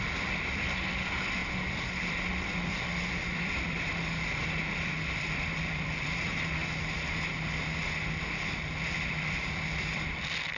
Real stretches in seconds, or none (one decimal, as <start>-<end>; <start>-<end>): 1.4-2.1; 6.6-8.4